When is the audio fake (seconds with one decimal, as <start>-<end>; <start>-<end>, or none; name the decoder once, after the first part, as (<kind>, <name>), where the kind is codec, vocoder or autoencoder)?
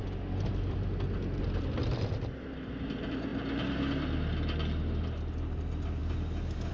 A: none